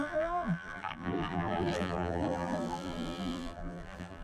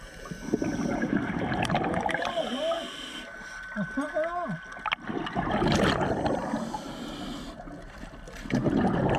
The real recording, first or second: second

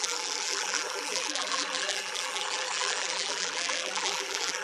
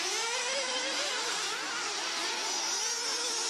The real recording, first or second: second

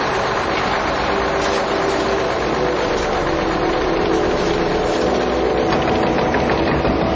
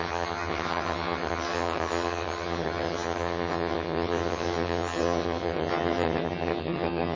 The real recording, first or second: first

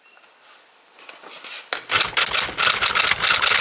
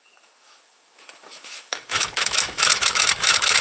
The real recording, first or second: first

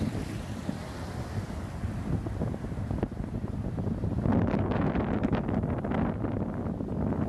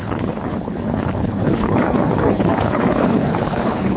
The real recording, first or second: first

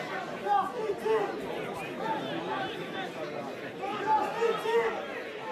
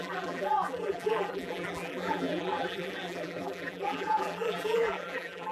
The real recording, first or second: first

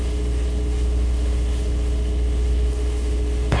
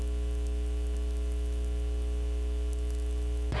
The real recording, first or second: second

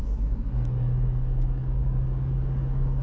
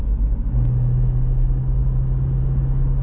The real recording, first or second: second